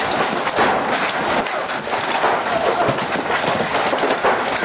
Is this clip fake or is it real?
real